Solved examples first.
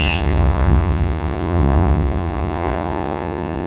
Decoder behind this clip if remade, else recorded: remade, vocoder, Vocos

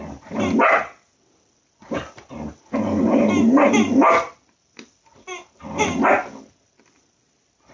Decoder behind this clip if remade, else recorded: recorded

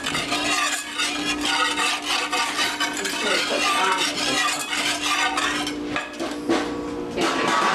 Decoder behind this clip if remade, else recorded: recorded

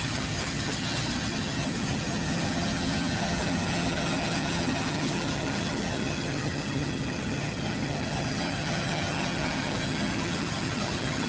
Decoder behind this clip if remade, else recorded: remade, vocoder, HiFi-GAN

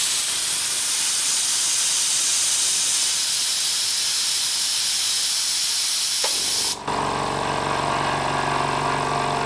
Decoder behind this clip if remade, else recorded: recorded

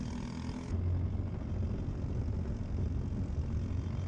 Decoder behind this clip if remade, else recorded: recorded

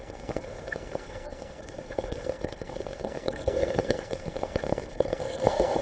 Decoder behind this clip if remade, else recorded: remade, codec, SNAC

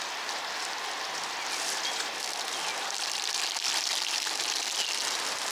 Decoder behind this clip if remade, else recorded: recorded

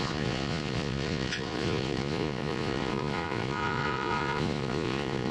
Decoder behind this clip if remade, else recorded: remade, vocoder, Vocos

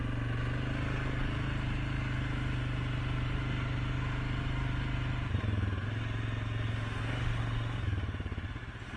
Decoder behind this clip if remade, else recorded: recorded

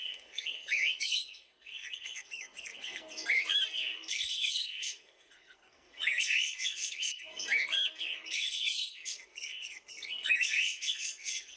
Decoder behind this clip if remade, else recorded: remade, codec, SNAC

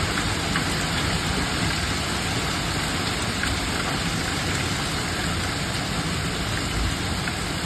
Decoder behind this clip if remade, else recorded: recorded